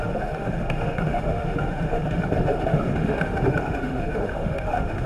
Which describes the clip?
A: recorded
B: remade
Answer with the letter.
B